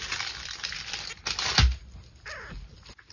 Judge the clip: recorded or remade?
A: recorded